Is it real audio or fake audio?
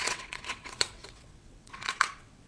fake